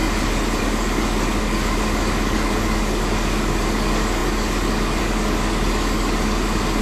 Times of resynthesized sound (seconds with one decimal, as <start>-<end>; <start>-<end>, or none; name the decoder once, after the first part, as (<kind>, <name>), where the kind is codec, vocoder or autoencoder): 0.6-6.8 (codec, DAC)